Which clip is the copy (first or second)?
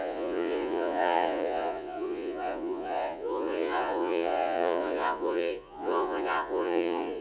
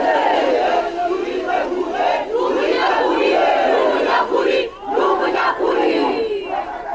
first